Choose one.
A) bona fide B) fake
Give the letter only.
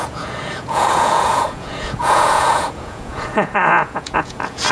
B